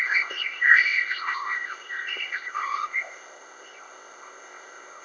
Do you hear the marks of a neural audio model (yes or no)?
yes